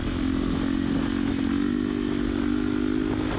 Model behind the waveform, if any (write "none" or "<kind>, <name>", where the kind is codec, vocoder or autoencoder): none